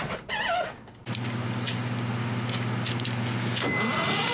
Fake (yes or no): no